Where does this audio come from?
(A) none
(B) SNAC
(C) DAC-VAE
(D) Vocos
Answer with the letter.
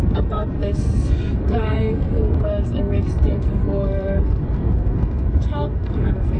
B